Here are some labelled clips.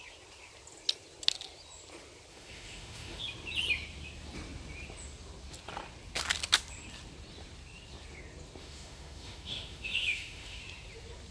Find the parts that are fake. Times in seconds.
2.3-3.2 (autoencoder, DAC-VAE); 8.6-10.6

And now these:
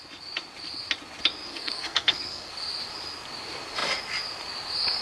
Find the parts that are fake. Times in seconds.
1.5-2.5 (codec, SNAC)